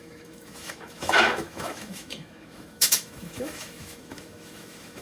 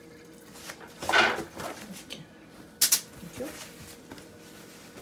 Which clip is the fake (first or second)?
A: first